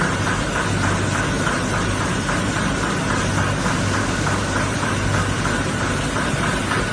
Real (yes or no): yes